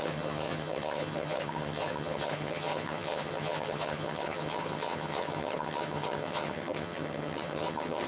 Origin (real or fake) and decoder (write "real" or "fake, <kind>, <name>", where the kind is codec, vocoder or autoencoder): fake, vocoder, HiFi-GAN